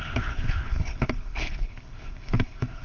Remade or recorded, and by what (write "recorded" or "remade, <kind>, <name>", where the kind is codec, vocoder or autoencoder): remade, codec, HILCodec